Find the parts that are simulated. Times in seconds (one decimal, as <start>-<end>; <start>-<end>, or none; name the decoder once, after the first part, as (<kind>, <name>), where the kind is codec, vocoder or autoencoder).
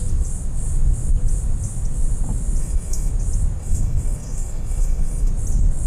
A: 2.6-3.1 (codec, SNAC); 3.6-5.3